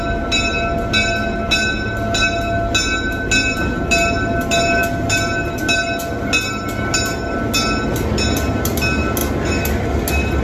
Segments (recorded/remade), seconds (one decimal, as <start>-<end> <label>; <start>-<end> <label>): 0.0-10.4 recorded